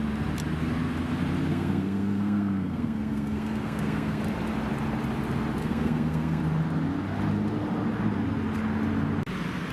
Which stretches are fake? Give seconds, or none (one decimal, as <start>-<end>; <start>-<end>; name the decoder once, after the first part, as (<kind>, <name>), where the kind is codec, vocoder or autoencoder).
1.5-4.2 (codec, SNAC); 5.6-6.4